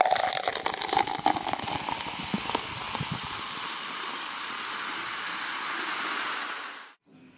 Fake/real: real